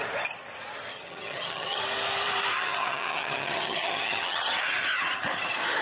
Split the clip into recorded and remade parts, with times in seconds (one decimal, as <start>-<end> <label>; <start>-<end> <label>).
0.0-0.9 recorded; 0.9-1.8 remade; 1.8-2.5 recorded; 2.5-5.2 remade; 5.2-5.8 recorded